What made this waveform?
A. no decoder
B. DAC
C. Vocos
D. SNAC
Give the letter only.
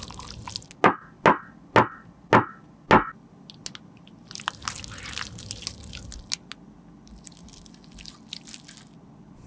A